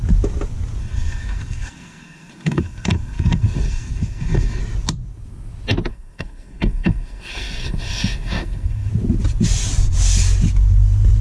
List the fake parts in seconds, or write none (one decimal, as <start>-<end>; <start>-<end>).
0.8-4.6; 5.9-8.9

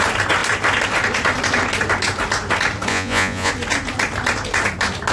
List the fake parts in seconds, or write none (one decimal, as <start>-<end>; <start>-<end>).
2.9-3.5

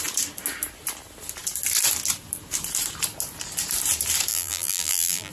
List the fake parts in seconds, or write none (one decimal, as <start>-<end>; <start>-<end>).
4.3-5.3

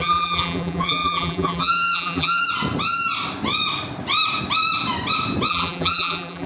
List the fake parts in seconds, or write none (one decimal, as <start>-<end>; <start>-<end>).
0.0-2.4; 5.5-6.5

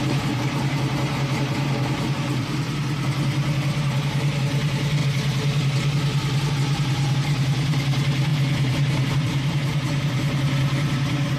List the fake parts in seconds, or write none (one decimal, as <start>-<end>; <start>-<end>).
0.0-2.8; 4.1-5.0; 6.5-11.4